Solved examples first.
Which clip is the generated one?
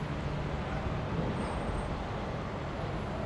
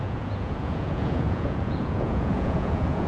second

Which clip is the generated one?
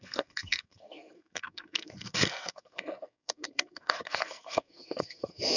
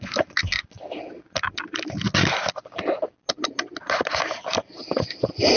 first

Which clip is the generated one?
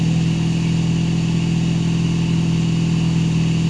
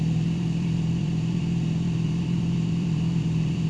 second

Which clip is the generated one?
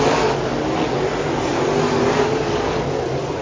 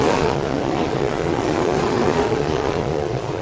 second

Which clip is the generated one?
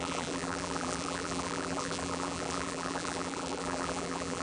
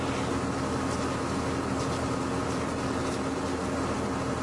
first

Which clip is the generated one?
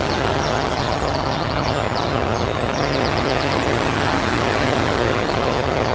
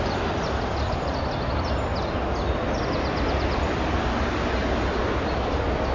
first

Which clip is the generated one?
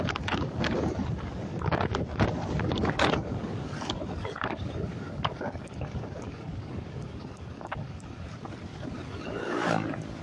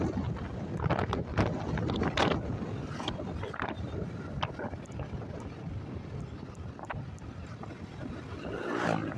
first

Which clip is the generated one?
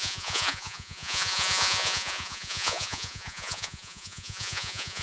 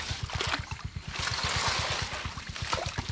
first